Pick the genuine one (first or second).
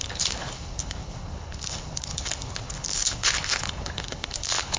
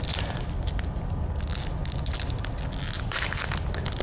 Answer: second